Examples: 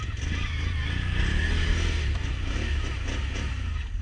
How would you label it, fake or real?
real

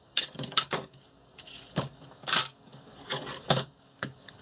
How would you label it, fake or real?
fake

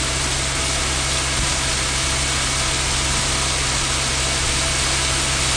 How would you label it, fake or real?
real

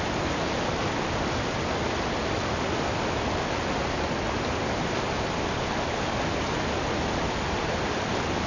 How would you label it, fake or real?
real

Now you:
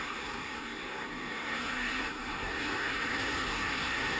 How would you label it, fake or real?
fake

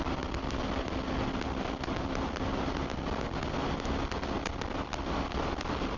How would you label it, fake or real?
real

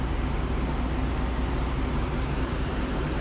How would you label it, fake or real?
real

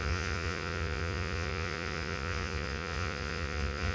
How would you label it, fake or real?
fake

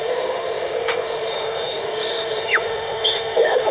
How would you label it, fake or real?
fake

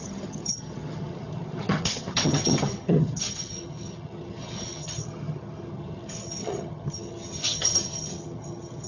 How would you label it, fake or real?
fake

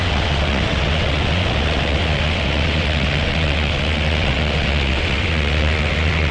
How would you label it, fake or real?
fake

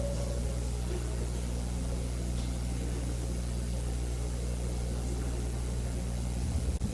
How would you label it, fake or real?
real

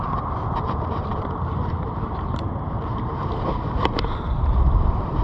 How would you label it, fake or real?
fake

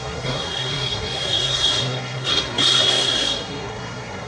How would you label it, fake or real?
fake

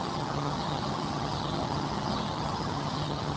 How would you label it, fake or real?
fake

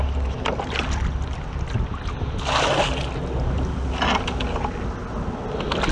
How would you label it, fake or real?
real